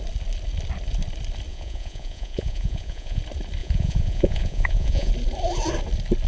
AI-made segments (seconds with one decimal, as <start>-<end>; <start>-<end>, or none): 1.5-3.2; 3.6-5.1